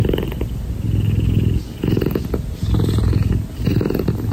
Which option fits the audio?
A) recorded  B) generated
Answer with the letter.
A